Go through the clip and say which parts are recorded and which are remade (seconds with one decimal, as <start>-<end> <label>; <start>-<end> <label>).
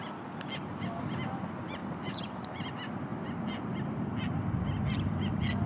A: 0.0-1.8 recorded; 1.8-2.7 remade; 2.7-5.7 recorded